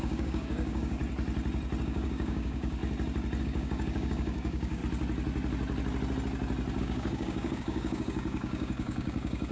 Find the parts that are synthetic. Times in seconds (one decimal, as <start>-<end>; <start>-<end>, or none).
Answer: 0.0-1.0; 1.8-2.8; 3.4-4.8; 6.8-9.5